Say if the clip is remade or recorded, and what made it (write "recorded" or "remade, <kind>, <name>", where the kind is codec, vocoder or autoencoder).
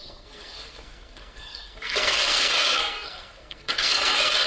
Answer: remade, codec, SNAC